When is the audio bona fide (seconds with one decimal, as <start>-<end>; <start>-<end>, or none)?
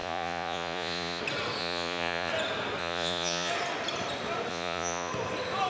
1.2-1.6; 2.3-2.8; 3.5-4.5; 5.1-5.7